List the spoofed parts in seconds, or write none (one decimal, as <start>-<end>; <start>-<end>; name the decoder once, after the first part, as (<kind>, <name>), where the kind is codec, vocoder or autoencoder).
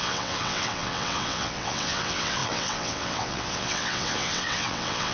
0.0-5.1 (vocoder, WaveNeXt)